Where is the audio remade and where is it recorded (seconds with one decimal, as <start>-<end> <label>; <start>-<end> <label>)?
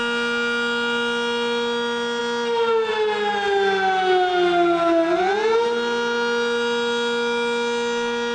0.0-8.3 recorded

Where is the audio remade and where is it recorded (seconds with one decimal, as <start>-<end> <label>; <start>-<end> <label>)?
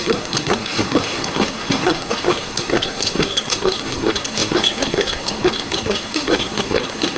0.0-7.2 remade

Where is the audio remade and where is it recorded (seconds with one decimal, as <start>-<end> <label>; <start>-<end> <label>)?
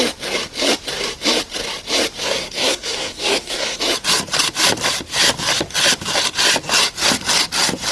0.0-2.2 recorded; 2.2-3.8 remade; 3.8-7.9 recorded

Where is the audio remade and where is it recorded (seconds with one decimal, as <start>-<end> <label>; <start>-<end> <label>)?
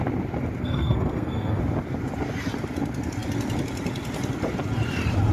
0.0-0.6 recorded; 0.6-1.6 remade; 1.6-5.3 recorded